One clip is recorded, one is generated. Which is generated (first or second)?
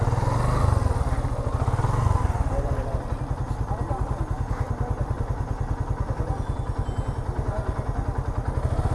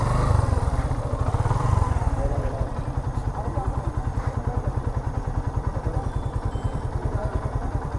second